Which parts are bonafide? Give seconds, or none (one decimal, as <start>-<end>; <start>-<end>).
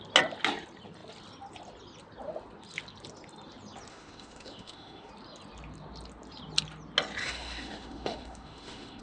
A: 0.0-3.9; 5.1-7.2